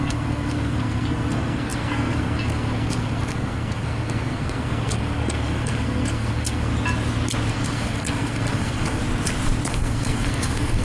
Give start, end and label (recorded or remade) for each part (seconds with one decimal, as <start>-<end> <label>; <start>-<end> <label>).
0.0-6.7 remade; 6.7-7.5 recorded; 7.5-9.0 remade; 9.0-9.7 recorded; 9.7-10.8 remade